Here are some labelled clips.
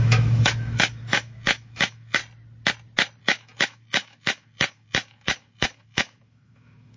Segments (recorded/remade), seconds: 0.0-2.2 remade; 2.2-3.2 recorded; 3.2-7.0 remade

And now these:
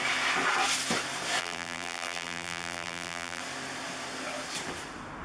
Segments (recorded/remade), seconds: 0.0-1.4 recorded; 1.4-3.4 remade; 3.4-5.2 recorded

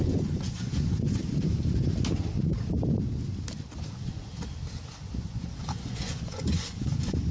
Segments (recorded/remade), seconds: 0.0-1.2 remade; 1.2-3.8 recorded; 3.8-4.3 remade; 4.3-4.9 recorded; 4.9-7.3 remade

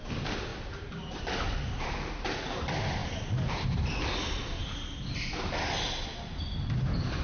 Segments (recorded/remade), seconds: 0.0-0.5 recorded; 0.5-1.2 remade; 1.2-3.0 recorded; 3.0-3.9 remade; 3.9-4.6 recorded; 4.6-5.3 remade; 5.3-7.2 recorded

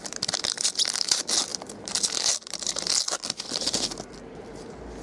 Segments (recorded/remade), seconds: 0.0-1.5 recorded; 1.5-4.5 remade; 4.5-5.0 recorded